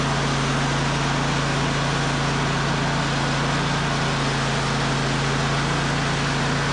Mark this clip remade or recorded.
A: recorded